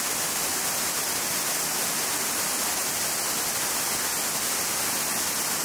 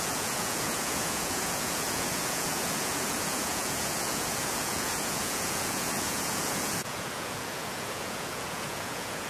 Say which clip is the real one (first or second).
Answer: first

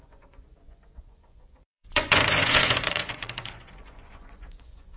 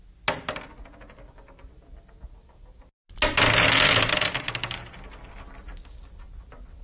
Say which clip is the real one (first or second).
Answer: second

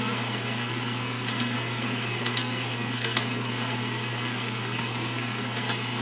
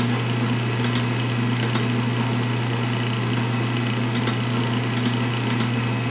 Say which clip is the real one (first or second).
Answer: second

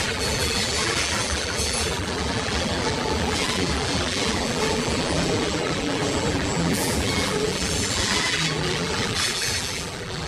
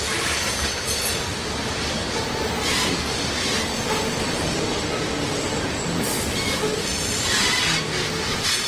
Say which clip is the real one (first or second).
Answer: second